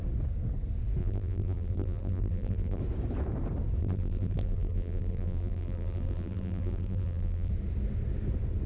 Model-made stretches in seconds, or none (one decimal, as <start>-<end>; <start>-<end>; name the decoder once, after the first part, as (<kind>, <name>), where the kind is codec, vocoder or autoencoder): 1.0-2.8 (vocoder, BigVGAN v2); 3.8-7.5